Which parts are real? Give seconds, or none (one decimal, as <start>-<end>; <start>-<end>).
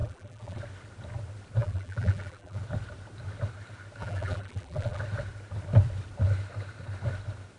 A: 0.6-1.6; 2.6-4.0; 5.0-7.6